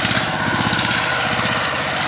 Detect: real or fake fake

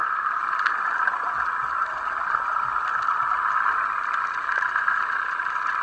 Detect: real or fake real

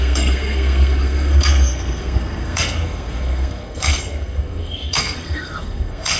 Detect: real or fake fake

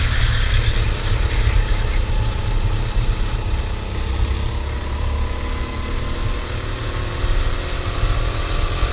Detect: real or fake real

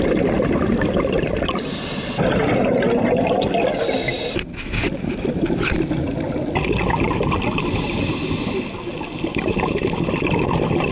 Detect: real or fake real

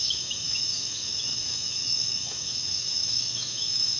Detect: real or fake fake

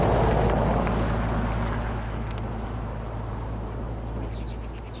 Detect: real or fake real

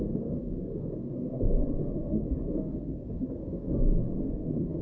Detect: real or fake fake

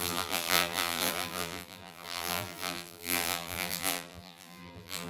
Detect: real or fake fake